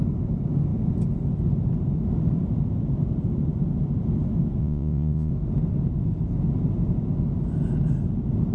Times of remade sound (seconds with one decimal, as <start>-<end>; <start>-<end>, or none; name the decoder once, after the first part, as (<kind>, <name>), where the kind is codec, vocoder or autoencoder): 4.6-5.3 (vocoder, Vocos)